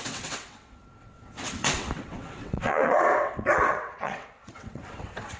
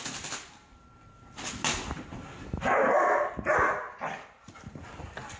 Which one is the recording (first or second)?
second